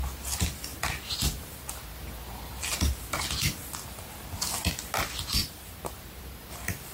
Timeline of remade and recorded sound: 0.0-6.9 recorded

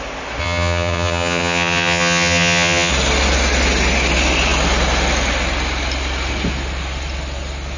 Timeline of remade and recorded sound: 0.0-0.4 recorded; 0.4-2.9 remade; 2.9-7.8 recorded

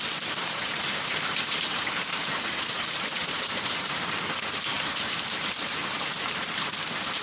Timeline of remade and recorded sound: 0.0-0.4 recorded; 0.4-4.1 remade; 4.1-4.7 recorded; 4.7-6.8 remade; 6.8-7.2 recorded